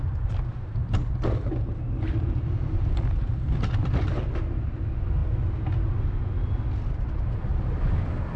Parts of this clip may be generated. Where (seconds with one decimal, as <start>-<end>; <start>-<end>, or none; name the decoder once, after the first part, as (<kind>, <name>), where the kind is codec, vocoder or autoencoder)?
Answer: 0.0-5.2 (vocoder, BigVGAN v2); 7.4-8.4